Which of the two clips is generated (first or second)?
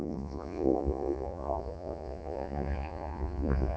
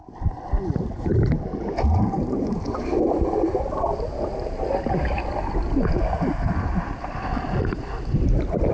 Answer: first